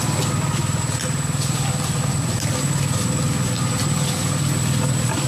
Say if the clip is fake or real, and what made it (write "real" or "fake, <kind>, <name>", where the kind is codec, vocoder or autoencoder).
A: real